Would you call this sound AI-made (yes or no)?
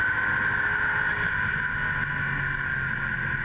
no